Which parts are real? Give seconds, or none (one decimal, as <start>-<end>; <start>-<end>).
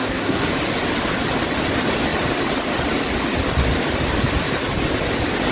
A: 0.5-5.5